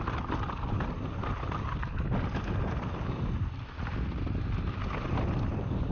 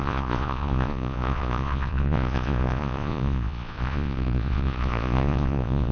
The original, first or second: first